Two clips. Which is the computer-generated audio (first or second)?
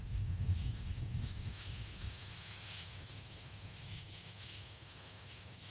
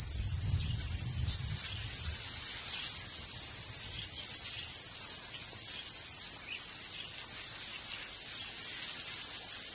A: first